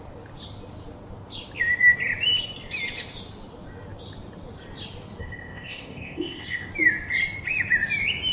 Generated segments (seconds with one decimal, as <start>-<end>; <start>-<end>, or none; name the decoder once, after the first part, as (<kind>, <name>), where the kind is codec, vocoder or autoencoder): 5.2-6.7 (codec, ZipCodec)